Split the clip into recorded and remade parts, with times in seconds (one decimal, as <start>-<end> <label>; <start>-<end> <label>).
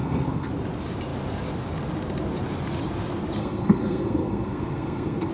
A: 0.0-0.5 remade; 0.5-3.4 recorded; 3.4-5.3 remade